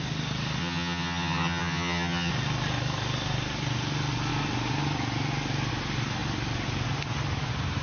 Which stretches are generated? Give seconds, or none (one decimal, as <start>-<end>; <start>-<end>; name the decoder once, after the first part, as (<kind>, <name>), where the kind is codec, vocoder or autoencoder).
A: 0.6-2.3 (vocoder, HiFi-GAN)